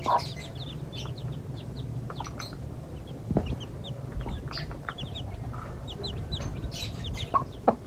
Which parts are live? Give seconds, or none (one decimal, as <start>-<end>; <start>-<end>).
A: 0.0-6.5

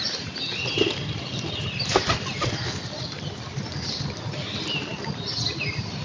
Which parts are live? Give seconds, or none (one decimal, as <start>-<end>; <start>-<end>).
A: 0.0-6.0

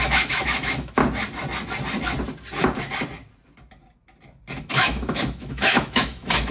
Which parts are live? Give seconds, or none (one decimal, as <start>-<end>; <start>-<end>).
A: 1.0-4.6

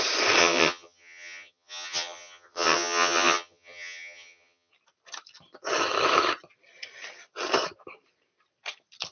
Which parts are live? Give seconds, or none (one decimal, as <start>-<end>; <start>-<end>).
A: 0.0-0.4; 4.7-9.1

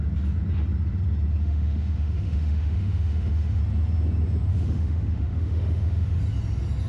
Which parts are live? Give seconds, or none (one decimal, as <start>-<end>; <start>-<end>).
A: 0.0-1.4; 3.6-4.5; 6.2-6.9

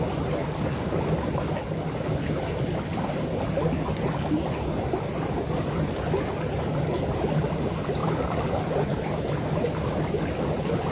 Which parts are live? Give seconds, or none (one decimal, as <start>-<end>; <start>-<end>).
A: 0.0-0.4; 1.0-10.9

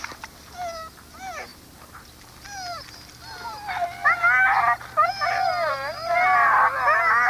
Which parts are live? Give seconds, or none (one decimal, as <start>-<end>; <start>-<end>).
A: 0.0-7.3

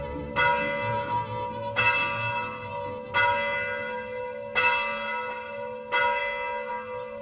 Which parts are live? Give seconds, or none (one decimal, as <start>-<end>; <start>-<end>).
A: 0.0-7.2